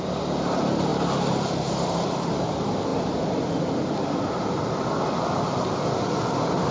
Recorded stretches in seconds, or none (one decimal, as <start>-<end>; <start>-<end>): 0.0-6.7